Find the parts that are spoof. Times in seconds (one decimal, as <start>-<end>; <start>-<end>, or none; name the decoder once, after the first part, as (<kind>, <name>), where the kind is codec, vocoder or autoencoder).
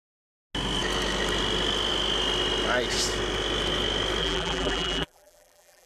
4.2-5.9 (vocoder, BigVGAN v2)